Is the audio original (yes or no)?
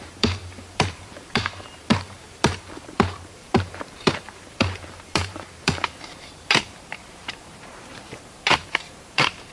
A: no